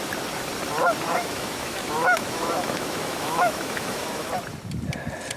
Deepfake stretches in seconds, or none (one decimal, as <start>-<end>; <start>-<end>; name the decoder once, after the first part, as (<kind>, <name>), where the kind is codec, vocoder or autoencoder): 1.1-4.3 (autoencoder, DAC-VAE)